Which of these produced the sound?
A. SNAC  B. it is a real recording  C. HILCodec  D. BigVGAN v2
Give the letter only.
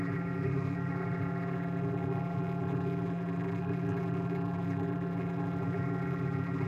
D